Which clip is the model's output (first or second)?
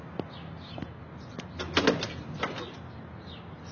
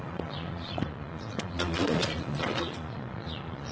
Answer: second